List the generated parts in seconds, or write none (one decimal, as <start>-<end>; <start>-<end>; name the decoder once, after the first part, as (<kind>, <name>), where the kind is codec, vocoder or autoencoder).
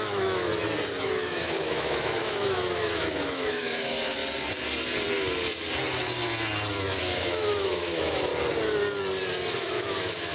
0.0-0.5 (autoencoder, DAC-VAE); 1.0-4.2; 7.0-8.3; 9.5-10.3